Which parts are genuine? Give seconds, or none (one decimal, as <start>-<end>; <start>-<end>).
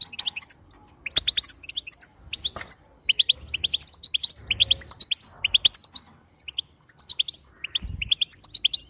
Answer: 0.0-8.9